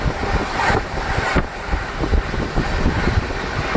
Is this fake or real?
fake